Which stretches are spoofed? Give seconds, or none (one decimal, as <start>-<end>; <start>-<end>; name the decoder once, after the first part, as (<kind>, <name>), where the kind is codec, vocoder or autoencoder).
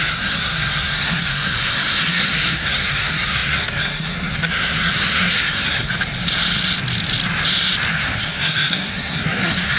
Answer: 0.0-5.9 (codec, SNAC); 7.9-9.8